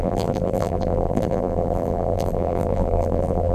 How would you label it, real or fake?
fake